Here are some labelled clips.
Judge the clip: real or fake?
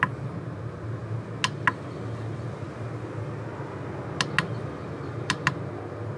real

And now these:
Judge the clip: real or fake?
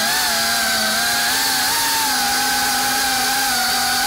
real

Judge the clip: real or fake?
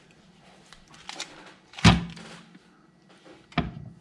real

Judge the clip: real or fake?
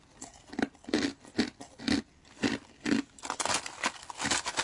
real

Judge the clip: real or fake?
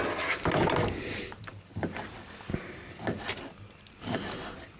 real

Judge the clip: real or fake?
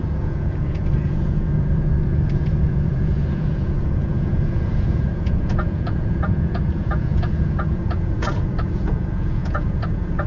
fake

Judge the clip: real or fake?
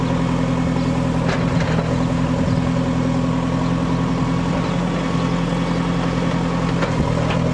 real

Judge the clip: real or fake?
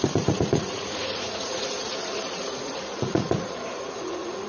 fake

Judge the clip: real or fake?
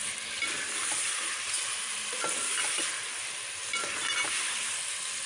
real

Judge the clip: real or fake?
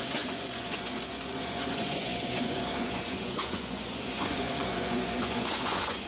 fake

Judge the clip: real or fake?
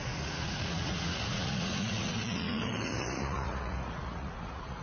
fake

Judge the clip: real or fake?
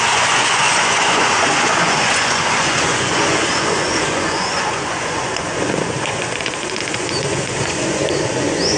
fake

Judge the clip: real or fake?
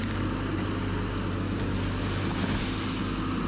real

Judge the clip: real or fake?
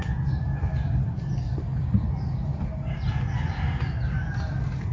real